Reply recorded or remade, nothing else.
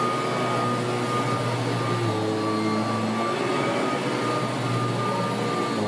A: recorded